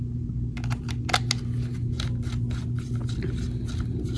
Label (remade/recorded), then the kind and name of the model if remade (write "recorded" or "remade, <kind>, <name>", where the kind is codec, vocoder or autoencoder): recorded